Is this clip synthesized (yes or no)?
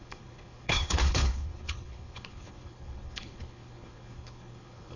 yes